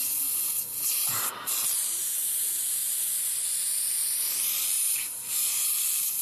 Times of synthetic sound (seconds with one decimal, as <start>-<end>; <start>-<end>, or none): 0.0-6.2